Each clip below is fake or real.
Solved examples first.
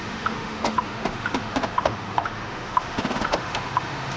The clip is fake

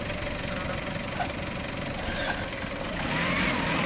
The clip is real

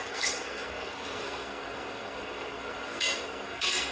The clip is fake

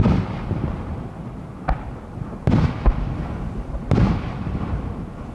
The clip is real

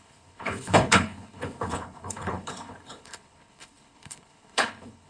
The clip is fake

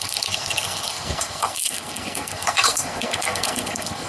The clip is fake